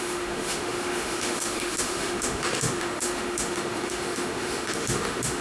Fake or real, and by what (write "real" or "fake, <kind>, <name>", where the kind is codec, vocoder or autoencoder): fake, autoencoder, DAC-VAE